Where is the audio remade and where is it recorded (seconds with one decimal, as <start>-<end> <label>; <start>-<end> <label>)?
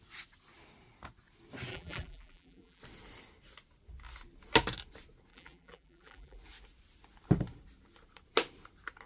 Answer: 0.0-1.7 recorded; 1.7-2.8 remade; 2.8-5.3 recorded; 5.3-6.4 remade; 6.4-9.1 recorded